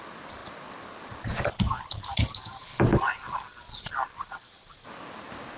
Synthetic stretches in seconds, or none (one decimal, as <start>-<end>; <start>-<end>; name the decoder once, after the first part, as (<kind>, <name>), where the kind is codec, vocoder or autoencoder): none